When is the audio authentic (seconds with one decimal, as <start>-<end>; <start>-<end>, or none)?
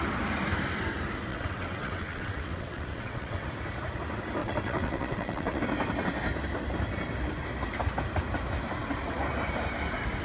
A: 0.0-1.3; 3.5-4.4; 5.6-10.2